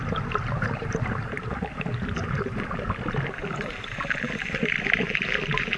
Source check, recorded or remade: remade